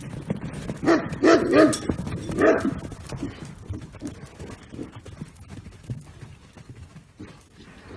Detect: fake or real real